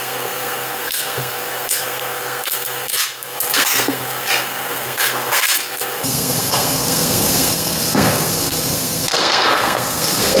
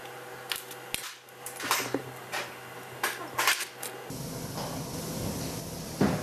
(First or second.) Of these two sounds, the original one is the second